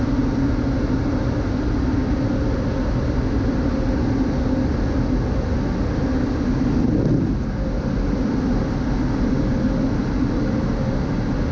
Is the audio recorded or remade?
recorded